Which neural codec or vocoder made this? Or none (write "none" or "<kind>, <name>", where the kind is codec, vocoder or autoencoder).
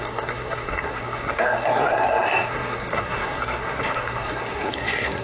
codec, SNAC